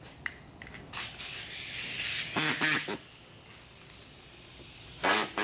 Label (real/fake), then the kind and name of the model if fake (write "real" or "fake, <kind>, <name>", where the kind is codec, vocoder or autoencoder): real